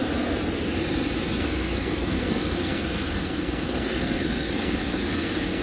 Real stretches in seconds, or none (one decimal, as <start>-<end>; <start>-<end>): 0.0-1.4